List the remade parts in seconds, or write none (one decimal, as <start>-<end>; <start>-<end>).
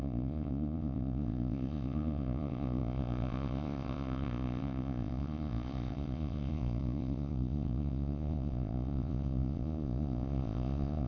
0.0-11.1